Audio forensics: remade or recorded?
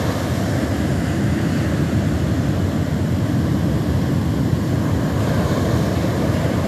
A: recorded